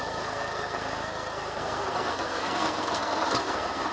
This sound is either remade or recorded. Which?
remade